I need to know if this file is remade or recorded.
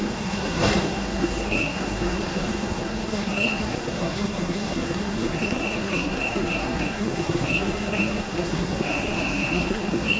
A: remade